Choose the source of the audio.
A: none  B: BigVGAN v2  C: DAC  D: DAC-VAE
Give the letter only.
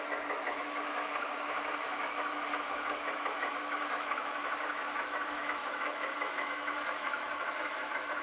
D